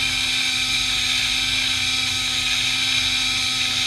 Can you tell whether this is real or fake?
real